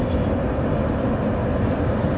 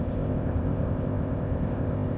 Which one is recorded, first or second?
first